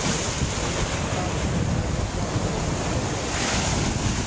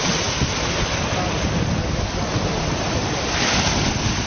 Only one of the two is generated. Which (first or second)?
second